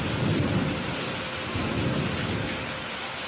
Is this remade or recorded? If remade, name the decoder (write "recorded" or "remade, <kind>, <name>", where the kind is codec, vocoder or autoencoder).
recorded